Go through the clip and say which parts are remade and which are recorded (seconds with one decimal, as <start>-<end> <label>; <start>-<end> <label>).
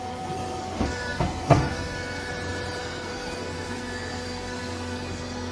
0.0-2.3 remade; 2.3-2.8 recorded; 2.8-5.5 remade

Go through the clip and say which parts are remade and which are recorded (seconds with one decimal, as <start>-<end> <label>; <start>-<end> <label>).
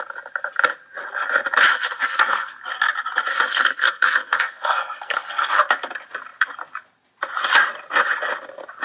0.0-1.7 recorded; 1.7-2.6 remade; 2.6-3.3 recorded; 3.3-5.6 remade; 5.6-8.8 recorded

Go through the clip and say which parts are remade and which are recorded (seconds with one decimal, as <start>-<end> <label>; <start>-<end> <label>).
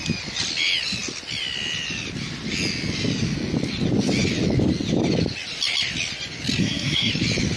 0.0-6.6 recorded; 6.6-7.1 remade; 7.1-7.6 recorded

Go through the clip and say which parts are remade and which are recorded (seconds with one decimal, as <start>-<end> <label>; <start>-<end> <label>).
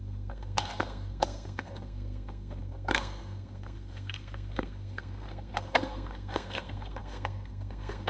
0.0-8.1 remade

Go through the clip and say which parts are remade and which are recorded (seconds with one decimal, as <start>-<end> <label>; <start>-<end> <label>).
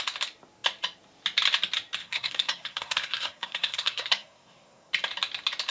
0.0-2.0 recorded; 2.0-4.9 remade; 4.9-5.7 recorded